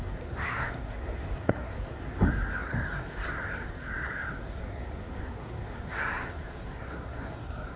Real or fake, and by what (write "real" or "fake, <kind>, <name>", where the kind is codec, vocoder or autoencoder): fake, codec, SNAC